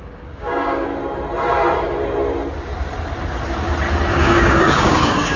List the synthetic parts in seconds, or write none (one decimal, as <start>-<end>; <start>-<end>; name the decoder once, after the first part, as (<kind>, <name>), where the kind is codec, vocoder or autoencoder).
0.0-0.9 (codec, DAC); 4.1-5.4